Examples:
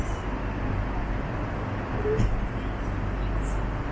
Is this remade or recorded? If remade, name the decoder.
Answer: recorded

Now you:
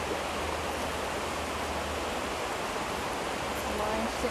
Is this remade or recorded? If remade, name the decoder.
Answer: recorded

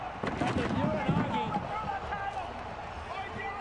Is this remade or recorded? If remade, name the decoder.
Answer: recorded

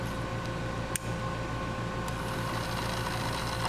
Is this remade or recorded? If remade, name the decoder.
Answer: recorded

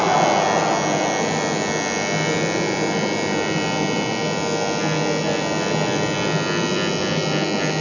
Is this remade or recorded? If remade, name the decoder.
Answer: recorded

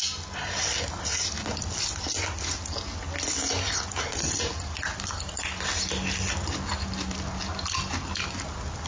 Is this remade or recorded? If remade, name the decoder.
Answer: recorded